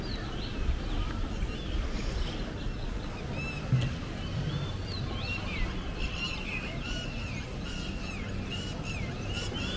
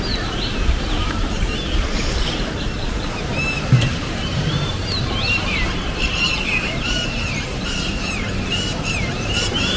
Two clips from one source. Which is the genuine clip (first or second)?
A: first